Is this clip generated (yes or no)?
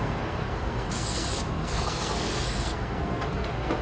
yes